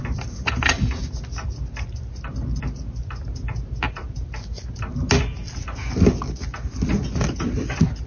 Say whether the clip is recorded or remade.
recorded